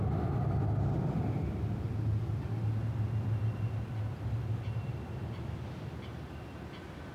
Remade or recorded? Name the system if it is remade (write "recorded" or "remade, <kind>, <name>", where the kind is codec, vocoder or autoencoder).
recorded